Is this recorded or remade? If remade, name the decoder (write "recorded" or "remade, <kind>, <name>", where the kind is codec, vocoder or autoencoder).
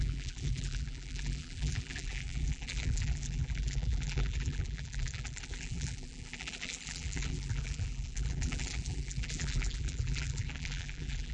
remade, vocoder, BigVGAN v2